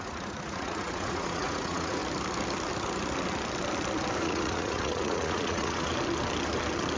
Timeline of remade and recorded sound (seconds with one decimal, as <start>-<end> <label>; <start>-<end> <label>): 0.0-2.0 remade; 2.0-4.2 recorded; 4.2-5.9 remade; 5.9-7.0 recorded